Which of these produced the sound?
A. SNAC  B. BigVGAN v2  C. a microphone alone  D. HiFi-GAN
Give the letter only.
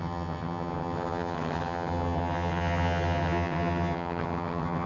D